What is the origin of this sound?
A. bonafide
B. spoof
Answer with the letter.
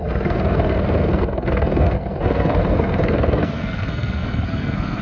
B